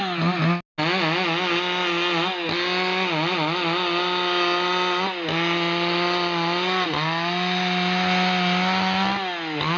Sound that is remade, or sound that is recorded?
recorded